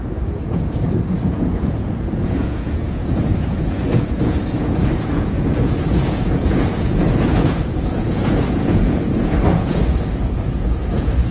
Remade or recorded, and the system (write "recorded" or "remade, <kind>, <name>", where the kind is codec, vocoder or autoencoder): remade, vocoder, Vocos